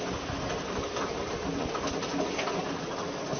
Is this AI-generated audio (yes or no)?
no